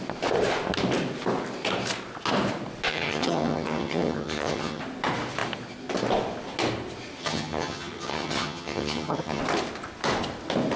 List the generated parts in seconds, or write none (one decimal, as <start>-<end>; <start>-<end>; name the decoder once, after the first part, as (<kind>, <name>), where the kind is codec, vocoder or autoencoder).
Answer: 2.9-4.8 (vocoder, HiFi-GAN); 7.2-9.4

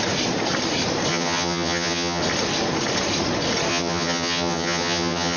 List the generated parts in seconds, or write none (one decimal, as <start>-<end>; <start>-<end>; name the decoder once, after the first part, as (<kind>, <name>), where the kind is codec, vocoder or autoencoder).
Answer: 1.1-2.2 (vocoder, HiFi-GAN); 3.7-5.4

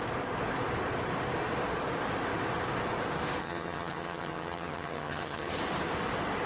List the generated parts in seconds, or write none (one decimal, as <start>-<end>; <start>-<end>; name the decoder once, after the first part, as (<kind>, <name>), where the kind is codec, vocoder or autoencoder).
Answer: 3.4-5.5 (vocoder, HiFi-GAN)

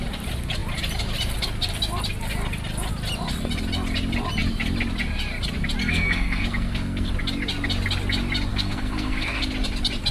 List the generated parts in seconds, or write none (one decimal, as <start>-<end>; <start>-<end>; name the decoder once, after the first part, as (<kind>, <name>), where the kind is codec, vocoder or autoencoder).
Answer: 5.8-7.1 (codec, SNAC); 8.5-9.4

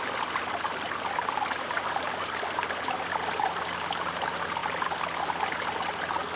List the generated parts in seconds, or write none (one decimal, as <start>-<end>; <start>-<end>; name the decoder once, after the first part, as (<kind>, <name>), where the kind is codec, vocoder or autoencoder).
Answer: none

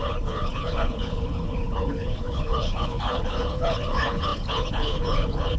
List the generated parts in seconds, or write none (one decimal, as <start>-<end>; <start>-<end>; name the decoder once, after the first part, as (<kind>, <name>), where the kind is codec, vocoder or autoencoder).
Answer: 0.0-5.6 (codec, HILCodec)

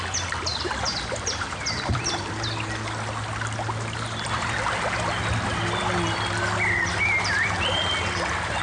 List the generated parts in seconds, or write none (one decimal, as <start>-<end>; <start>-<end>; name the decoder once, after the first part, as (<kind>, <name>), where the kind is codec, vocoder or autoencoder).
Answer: 0.5-2.3 (vocoder, BigVGAN v2)

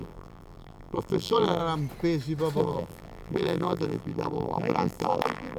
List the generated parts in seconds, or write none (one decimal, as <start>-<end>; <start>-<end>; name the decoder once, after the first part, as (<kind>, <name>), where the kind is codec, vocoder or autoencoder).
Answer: 0.0-1.6 (vocoder, BigVGAN v2); 2.6-5.6